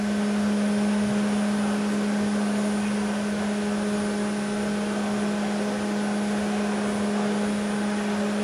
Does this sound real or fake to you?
real